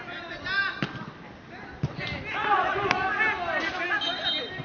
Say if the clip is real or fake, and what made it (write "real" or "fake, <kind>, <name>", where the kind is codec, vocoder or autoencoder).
real